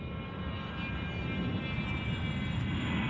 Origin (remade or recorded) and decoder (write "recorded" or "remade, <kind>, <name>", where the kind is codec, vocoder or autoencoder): recorded